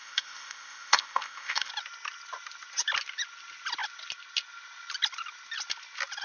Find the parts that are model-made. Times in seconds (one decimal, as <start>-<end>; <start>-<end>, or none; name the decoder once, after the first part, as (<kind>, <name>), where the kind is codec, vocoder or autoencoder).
0.0-1.7 (codec, ZipCodec)